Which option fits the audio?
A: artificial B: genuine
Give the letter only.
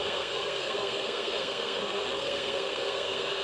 A